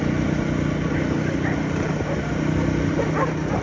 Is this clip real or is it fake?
real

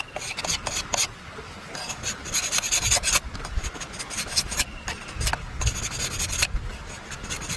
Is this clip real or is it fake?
real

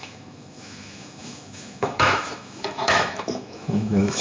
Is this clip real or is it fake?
fake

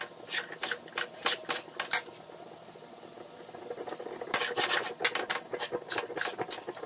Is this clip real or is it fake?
real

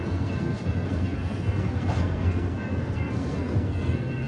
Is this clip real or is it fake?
fake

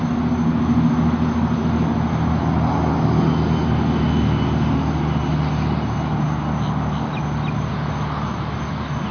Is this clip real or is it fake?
real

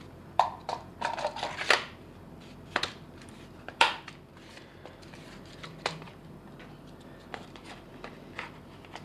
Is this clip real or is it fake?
fake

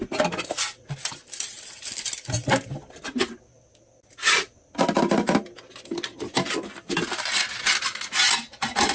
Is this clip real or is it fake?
real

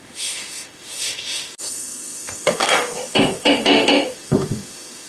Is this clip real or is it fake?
fake